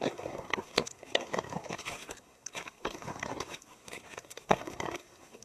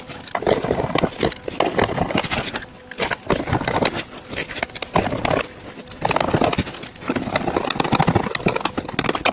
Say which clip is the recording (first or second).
second